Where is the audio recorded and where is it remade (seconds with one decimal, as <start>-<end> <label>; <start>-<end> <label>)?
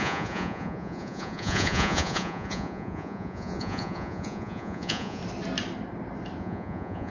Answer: 0.0-5.2 remade; 5.2-6.4 recorded; 6.4-7.1 remade